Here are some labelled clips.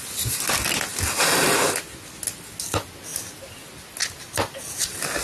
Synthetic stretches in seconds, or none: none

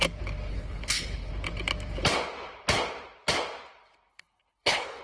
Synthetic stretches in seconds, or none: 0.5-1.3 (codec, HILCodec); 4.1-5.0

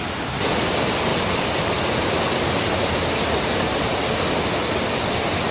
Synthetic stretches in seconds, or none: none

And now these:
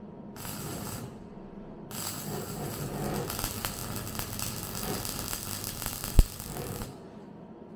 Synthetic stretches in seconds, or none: 0.7-1.3 (vocoder, BigVGAN v2)

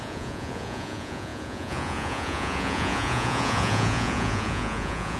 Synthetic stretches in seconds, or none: 0.0-5.2 (vocoder, Vocos)

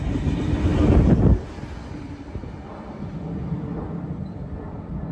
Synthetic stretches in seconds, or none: none

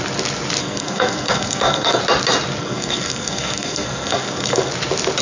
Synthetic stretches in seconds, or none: 0.6-2.0 (codec, SNAC); 2.6-4.7

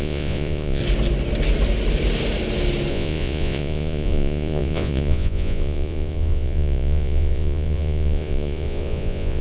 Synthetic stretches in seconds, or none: 0.0-0.8 (vocoder, Vocos); 2.9-9.4